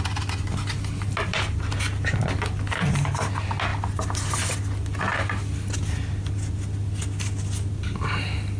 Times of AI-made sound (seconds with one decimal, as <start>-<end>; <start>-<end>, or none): none